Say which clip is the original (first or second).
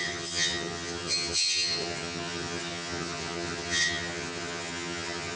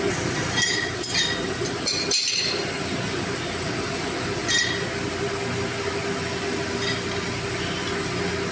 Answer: second